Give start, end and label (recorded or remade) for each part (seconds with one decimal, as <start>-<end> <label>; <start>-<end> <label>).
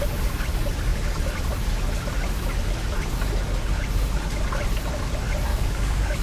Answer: 0.0-5.5 recorded; 5.5-6.2 remade